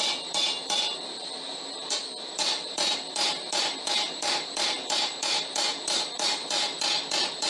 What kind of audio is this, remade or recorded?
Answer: remade